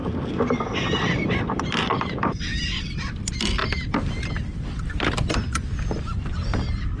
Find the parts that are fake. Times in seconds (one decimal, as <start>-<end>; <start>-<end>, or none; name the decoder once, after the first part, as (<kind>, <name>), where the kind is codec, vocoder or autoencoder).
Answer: 1.2-3.6 (vocoder, BigVGAN v2); 5.8-7.0

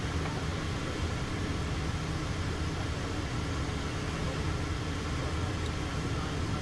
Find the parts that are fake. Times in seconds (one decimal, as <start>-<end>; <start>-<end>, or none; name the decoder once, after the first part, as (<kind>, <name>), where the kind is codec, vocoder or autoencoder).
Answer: none

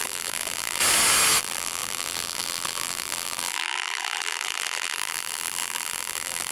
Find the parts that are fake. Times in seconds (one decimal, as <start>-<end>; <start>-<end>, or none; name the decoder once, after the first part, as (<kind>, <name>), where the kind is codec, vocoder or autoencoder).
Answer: 0.0-0.8 (vocoder, BigVGAN v2); 1.4-6.5

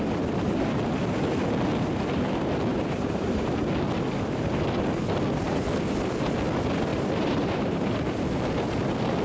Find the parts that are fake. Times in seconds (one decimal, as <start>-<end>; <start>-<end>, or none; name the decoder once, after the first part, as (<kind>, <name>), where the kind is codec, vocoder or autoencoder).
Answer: 2.7-3.7 (vocoder, BigVGAN v2); 6.9-7.8

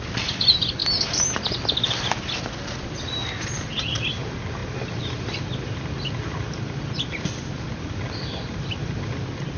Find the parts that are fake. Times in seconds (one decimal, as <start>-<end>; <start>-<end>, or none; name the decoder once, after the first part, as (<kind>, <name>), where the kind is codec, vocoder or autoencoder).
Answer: none

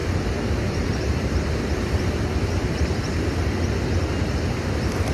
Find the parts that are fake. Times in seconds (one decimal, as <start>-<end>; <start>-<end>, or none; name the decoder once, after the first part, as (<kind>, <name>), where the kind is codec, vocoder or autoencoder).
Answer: 0.0-3.0 (vocoder, BigVGAN v2)